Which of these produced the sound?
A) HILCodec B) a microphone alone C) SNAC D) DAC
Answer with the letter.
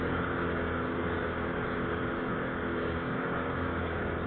D